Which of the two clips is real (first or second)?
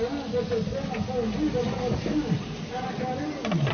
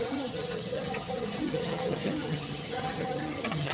first